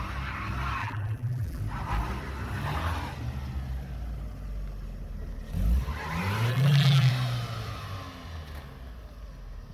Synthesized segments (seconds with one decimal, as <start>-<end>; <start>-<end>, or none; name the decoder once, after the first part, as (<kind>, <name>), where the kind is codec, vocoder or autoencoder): 0.8-1.6 (vocoder, BigVGAN v2); 6.5-7.1

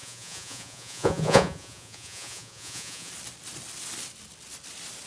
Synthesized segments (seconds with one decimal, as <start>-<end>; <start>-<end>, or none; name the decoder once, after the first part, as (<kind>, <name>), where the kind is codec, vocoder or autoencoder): 0.0-3.1 (vocoder, Vocos)

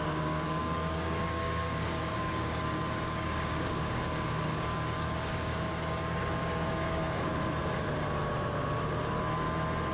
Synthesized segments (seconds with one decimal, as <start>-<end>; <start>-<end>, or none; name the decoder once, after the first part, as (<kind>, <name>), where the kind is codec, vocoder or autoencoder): 0.0-7.3 (codec, DAC)

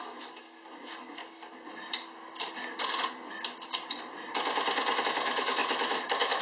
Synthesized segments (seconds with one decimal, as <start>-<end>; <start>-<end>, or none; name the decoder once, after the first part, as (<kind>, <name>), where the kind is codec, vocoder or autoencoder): 0.0-1.2 (autoencoder, DAC-VAE); 5.0-6.4

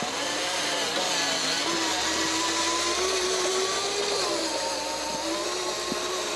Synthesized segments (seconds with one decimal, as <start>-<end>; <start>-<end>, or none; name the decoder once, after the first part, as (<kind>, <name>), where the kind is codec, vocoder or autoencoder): none

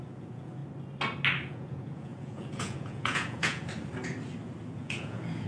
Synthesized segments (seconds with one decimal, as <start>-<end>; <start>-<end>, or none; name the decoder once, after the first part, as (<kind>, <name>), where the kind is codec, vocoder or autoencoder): 0.0-0.6 (vocoder, Vocos); 1.5-3.6; 4.8-5.5

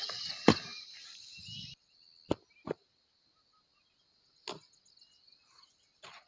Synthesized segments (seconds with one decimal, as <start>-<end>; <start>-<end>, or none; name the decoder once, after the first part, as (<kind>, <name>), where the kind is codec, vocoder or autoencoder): none

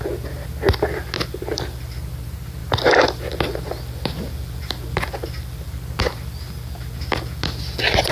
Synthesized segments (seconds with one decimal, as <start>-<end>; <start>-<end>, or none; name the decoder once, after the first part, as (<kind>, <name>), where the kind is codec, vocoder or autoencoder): none